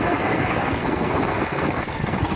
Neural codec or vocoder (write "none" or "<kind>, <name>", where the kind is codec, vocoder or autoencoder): codec, SNAC